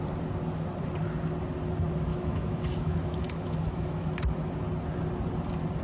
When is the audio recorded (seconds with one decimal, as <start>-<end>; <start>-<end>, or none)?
0.0-2.1; 4.1-5.8